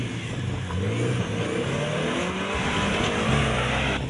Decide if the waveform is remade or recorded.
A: recorded